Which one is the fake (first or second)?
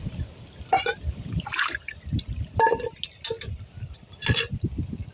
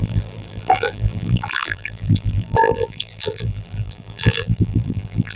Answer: second